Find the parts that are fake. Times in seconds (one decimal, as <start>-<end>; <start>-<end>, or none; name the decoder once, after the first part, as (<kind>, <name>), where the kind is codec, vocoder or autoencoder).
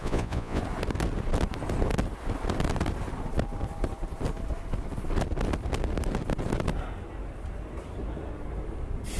0.0-0.6 (vocoder, Vocos)